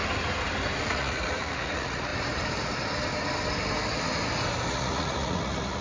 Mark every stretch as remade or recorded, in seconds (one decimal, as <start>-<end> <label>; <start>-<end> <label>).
0.0-0.8 recorded; 0.8-2.1 remade; 2.1-4.7 recorded; 4.7-5.8 remade